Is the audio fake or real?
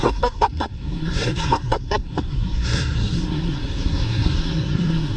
fake